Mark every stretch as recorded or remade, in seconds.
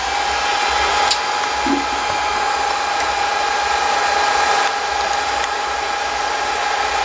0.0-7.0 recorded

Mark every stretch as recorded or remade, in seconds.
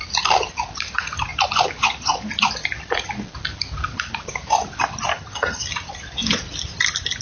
0.0-5.1 recorded; 5.1-5.6 remade; 5.6-7.2 recorded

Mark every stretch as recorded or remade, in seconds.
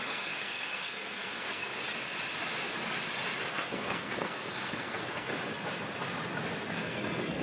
0.0-1.7 remade; 1.7-3.5 recorded; 3.5-5.3 remade; 5.3-6.7 recorded; 6.7-7.4 remade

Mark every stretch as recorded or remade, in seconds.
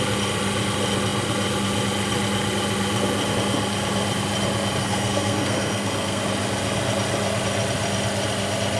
0.0-4.8 recorded; 4.8-6.2 remade; 6.2-8.8 recorded